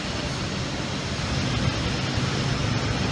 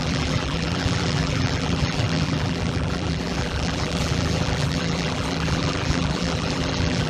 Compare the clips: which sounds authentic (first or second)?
first